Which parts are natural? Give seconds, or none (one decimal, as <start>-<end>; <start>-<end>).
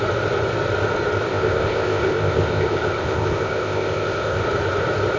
0.0-1.3; 4.4-5.2